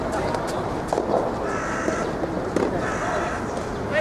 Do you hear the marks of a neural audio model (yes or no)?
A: no